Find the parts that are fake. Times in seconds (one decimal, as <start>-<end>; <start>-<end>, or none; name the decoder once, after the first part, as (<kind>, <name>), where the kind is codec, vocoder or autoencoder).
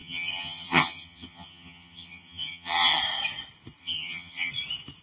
0.0-3.0 (vocoder, HiFi-GAN); 3.8-4.5